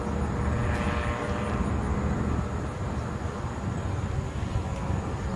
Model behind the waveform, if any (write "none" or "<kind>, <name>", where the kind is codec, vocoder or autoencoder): none